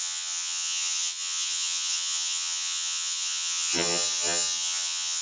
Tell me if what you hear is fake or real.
fake